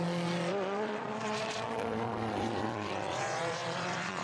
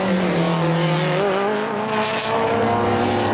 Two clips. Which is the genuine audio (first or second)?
second